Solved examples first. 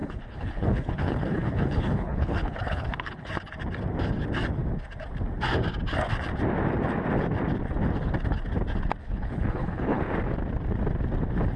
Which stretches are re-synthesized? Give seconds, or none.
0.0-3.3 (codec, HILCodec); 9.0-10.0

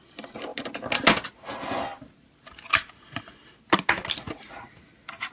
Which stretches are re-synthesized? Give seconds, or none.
none

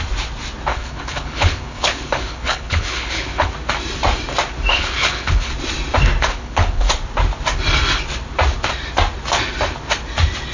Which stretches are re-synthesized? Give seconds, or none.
0.7-3.5 (codec, HILCodec); 4.7-5.5; 6.3-6.9

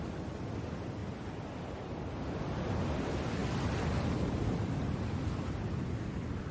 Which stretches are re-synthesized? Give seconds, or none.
none

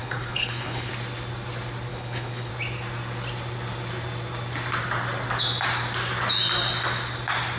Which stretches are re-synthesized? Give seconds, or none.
0.0-0.9 (codec, HILCodec); 1.9-2.5

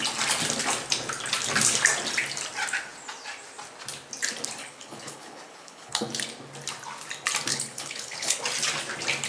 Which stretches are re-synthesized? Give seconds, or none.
4.6-6.1 (codec, HILCodec); 7.5-8.4

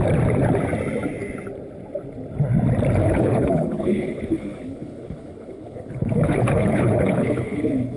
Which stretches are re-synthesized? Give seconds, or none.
3.0-8.0 (codec, HILCodec)